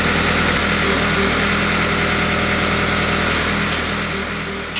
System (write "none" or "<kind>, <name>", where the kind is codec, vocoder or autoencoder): none